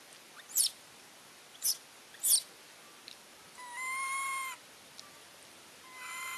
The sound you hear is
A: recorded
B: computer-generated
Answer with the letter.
A